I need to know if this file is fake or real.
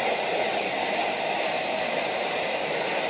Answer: fake